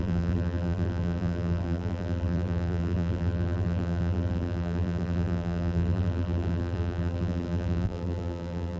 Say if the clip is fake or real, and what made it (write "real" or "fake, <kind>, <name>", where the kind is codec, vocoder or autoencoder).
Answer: fake, vocoder, BigVGAN v2